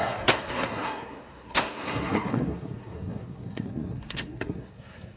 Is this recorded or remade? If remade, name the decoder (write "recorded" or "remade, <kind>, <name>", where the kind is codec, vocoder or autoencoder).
remade, codec, SNAC